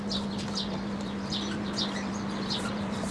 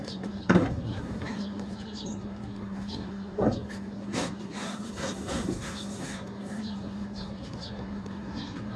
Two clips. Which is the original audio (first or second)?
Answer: first